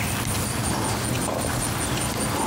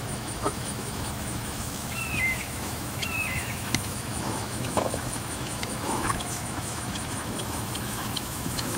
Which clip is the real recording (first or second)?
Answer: first